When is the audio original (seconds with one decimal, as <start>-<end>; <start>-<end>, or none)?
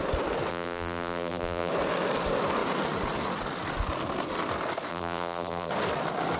0.0-0.5; 1.7-4.9; 5.7-6.4